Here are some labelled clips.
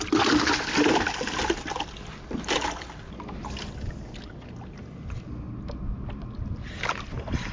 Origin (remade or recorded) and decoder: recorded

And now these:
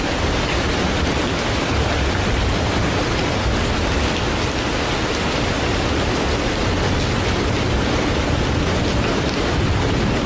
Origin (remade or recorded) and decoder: recorded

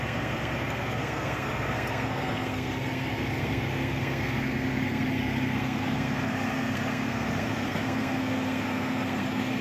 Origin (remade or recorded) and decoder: remade, codec, SNAC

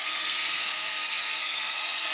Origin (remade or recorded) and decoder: remade, codec, SNAC